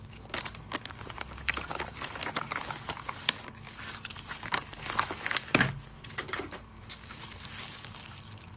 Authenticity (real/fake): fake